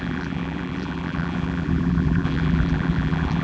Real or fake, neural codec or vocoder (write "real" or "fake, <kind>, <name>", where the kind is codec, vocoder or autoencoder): fake, vocoder, BigVGAN v2